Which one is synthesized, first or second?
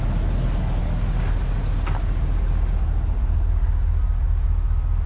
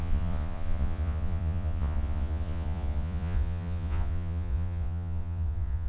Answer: second